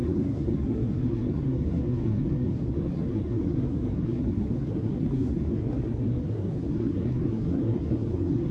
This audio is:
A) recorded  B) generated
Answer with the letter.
B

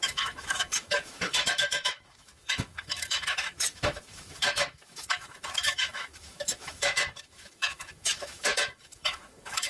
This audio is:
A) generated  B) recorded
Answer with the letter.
A